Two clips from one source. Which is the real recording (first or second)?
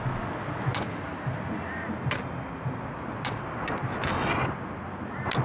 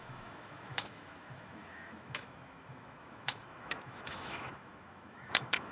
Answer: first